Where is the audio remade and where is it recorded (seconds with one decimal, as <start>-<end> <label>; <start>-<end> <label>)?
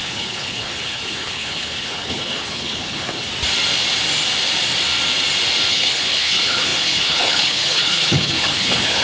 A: 0.0-3.3 remade; 3.3-5.7 recorded; 5.7-9.0 remade